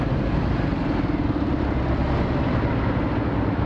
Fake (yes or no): no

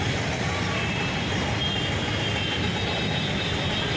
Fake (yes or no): no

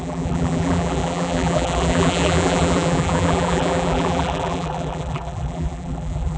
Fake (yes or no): yes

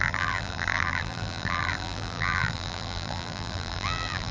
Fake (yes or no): yes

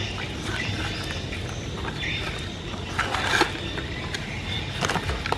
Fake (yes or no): no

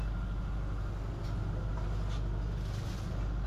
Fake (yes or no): no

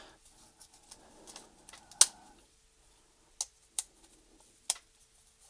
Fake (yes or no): no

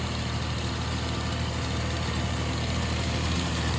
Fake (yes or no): yes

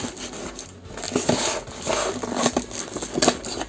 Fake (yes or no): no